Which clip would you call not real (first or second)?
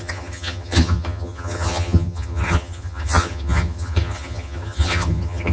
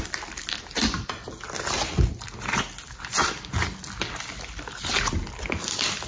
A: first